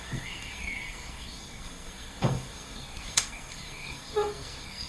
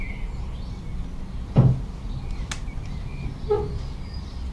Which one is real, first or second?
second